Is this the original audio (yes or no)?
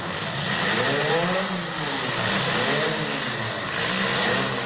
yes